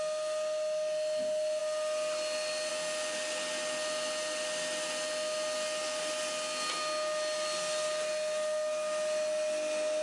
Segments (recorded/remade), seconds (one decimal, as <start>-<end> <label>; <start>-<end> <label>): 0.0-10.0 recorded